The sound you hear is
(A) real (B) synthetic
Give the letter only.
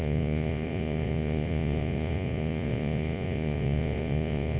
B